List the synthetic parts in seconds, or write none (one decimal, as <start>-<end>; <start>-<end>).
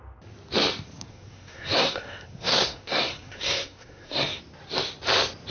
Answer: 1.1-4.4